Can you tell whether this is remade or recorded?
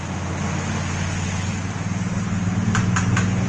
recorded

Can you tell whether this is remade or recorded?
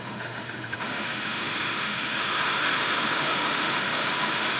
remade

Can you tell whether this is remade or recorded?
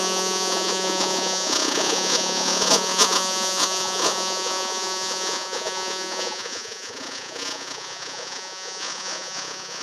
remade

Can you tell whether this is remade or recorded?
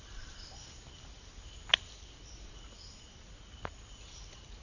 recorded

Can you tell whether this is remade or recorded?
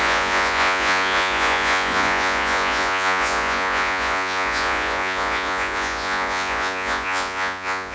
remade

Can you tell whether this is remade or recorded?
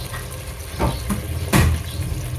recorded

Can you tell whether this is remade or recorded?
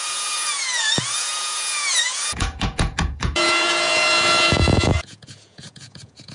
remade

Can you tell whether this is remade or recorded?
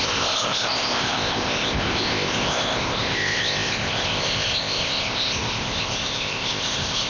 remade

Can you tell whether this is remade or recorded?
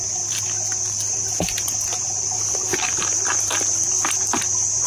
recorded